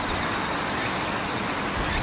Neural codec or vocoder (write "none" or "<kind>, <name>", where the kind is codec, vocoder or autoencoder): none